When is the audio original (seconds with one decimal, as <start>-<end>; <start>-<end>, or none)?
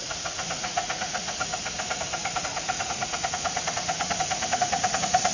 1.5-2.4